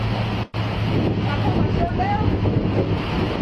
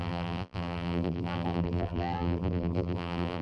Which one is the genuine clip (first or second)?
first